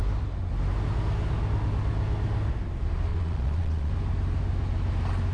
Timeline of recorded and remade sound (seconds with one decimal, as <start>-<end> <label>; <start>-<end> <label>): 0.0-3.1 recorded; 3.1-3.9 remade; 3.9-5.3 recorded